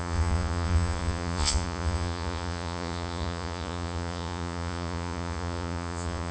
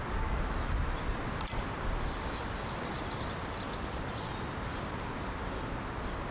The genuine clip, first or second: second